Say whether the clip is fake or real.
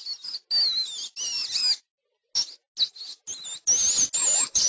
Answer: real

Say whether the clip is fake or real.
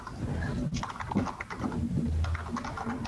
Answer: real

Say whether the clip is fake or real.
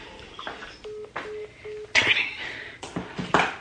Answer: real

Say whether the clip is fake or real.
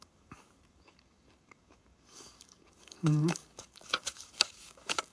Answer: fake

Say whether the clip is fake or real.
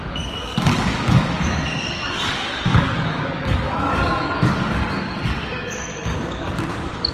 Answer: fake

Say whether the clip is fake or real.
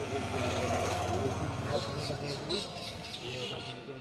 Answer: fake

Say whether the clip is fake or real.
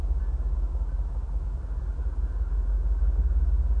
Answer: real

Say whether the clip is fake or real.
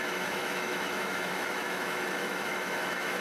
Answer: fake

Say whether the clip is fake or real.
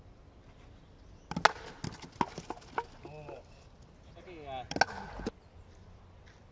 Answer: real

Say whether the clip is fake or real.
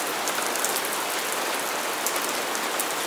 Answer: real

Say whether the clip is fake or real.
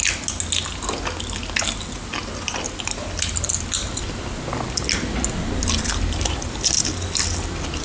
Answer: real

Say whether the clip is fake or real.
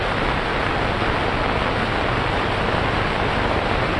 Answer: real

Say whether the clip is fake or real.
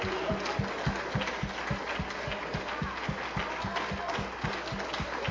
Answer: real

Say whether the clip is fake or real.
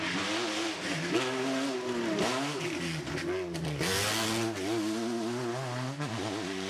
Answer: real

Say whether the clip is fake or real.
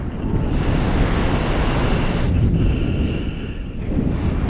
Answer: real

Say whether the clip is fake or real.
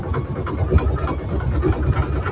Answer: real